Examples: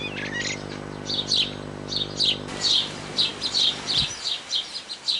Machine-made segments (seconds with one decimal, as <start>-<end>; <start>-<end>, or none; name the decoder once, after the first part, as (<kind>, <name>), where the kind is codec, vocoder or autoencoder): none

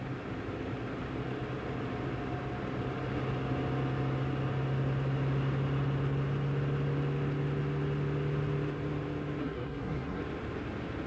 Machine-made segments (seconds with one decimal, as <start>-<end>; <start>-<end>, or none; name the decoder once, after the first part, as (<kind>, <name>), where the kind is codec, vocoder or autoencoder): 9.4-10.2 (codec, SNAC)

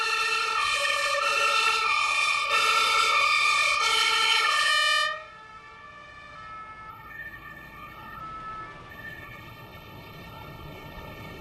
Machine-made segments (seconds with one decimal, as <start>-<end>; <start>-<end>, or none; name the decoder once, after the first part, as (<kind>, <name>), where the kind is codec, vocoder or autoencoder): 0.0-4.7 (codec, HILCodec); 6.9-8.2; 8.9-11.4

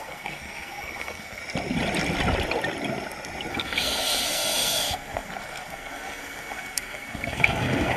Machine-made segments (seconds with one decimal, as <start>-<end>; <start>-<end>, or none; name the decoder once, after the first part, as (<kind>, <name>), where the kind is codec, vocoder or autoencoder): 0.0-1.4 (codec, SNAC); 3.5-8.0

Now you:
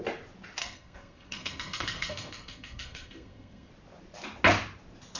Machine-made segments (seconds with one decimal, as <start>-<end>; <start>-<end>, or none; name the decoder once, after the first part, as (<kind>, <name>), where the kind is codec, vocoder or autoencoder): 0.6-3.7 (codec, SNAC)